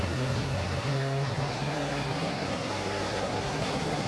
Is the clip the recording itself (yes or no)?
no